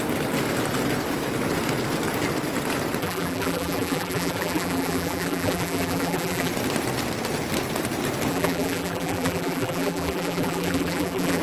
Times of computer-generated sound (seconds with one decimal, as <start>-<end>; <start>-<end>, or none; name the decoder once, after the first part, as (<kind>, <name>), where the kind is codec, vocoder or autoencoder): 3.0-6.5 (vocoder, BigVGAN v2); 8.3-11.4